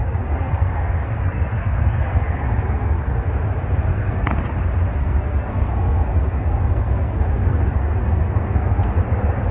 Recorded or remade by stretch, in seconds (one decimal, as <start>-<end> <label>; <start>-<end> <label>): 0.0-3.3 remade; 3.3-3.9 recorded; 3.9-4.4 remade; 4.4-5.0 recorded; 5.0-9.0 remade; 9.0-9.5 recorded